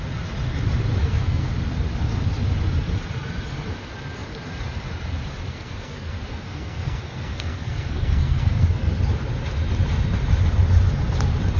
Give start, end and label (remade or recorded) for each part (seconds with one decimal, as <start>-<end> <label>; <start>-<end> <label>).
0.0-1.0 recorded; 1.0-1.5 remade; 1.5-5.5 recorded; 5.5-8.9 remade; 8.9-11.6 recorded